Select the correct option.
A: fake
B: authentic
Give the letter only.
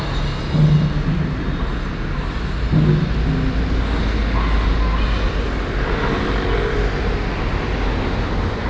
B